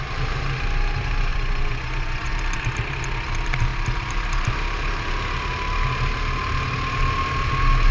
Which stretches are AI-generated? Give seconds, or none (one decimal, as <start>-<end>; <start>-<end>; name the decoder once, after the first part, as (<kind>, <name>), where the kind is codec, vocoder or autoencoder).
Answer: 1.3-2.3 (vocoder, Vocos)